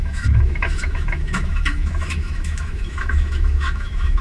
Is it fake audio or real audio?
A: fake